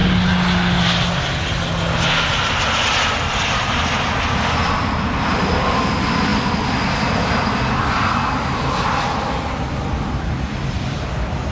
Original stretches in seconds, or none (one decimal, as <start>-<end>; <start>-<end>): 0.0-11.5